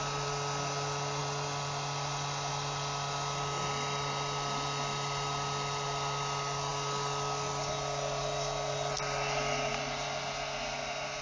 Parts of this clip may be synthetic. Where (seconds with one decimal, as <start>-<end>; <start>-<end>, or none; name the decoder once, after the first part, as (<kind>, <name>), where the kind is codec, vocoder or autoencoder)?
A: none